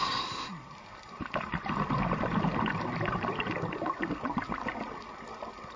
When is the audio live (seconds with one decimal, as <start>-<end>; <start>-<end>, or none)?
3.5-5.8